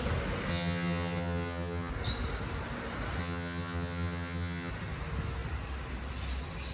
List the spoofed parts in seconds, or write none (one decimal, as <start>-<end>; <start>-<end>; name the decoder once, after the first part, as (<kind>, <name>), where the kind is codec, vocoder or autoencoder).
0.5-1.9 (vocoder, HiFi-GAN); 3.2-4.7